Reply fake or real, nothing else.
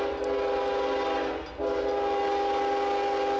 real